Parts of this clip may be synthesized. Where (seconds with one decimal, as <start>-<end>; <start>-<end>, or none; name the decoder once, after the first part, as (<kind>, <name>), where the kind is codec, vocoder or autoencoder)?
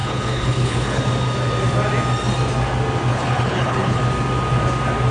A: 0.0-1.0 (codec, HILCodec); 3.1-4.0